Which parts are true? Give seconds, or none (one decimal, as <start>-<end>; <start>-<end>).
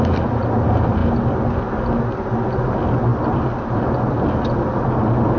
0.0-5.4